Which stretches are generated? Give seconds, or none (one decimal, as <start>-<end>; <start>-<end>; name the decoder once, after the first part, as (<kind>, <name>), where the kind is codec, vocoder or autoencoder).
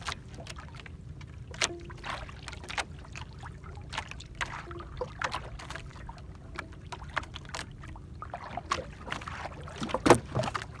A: none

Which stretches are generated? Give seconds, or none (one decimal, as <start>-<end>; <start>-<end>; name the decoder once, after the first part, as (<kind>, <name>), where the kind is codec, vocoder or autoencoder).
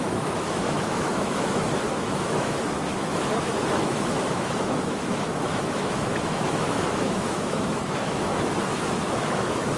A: 0.0-8.3 (autoencoder, DAC-VAE); 8.9-9.8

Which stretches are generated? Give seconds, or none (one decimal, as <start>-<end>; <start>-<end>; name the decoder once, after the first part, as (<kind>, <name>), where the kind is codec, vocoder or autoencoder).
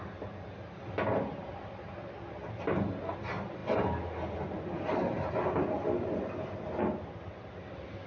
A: none